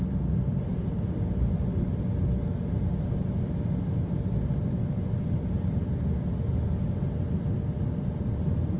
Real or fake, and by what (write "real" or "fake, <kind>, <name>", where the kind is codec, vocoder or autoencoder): real